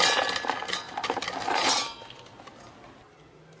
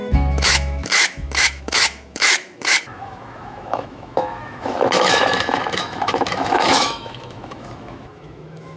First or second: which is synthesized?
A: second